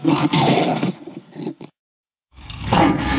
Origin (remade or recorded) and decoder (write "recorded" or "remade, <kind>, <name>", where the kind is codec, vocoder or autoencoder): remade, codec, SNAC